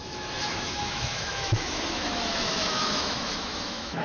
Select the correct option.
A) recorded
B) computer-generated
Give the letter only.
B